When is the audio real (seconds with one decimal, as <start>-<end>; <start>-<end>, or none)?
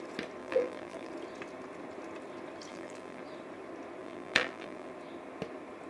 0.0-0.4; 1.1-2.7; 3.2-4.0; 4.9-5.9